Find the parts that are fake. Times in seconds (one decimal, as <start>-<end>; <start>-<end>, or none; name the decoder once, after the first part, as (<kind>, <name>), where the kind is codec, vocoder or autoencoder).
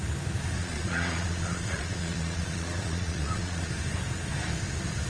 0.6-3.7 (vocoder, Vocos)